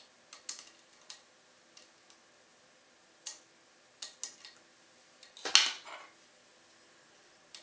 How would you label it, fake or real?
real